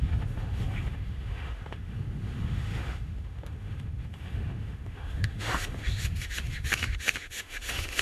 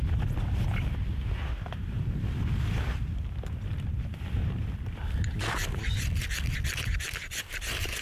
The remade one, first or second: first